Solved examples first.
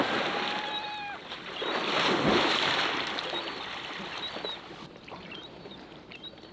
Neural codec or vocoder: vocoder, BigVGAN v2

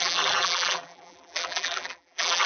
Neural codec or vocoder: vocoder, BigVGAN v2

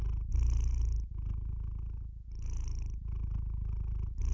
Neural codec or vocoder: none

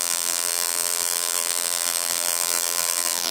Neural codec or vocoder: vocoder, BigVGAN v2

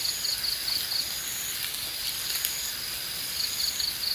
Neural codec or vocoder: none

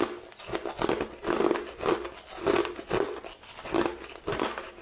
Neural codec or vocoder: none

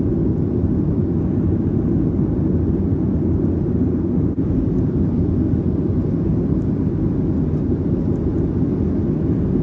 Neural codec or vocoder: none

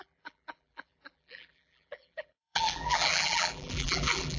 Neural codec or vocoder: vocoder, BigVGAN v2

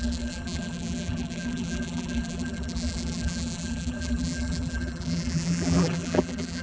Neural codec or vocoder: vocoder, BigVGAN v2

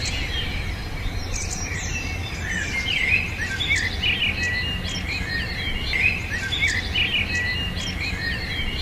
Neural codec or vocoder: none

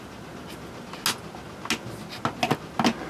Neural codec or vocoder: none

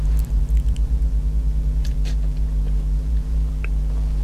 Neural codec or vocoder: vocoder, BigVGAN v2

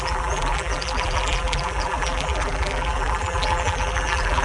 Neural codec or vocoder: vocoder, BigVGAN v2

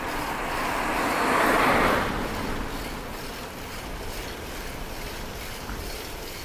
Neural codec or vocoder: none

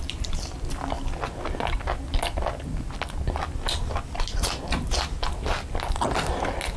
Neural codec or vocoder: none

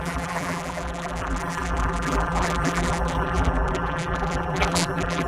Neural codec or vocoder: vocoder, BigVGAN v2